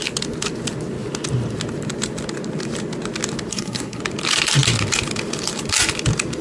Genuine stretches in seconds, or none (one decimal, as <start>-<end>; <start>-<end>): 0.0-3.5; 4.0-6.4

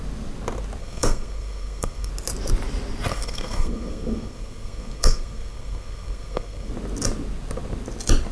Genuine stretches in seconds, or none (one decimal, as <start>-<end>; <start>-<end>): 0.0-0.8; 2.1-3.1; 6.7-8.3

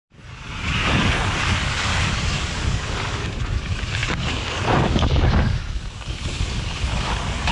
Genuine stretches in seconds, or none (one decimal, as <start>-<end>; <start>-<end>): none